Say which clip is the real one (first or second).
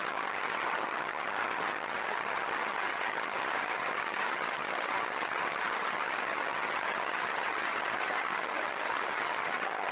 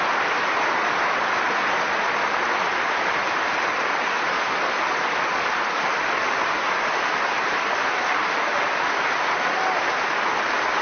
second